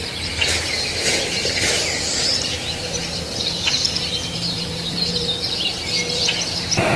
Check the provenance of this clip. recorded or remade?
remade